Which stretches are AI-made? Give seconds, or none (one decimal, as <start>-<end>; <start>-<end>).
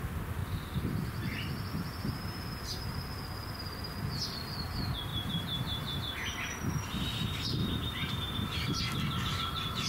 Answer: 5.1-6.0; 7.6-8.8